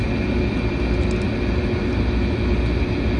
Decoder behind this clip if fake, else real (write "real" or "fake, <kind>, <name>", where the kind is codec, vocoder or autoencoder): real